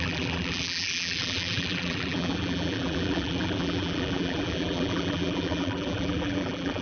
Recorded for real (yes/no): no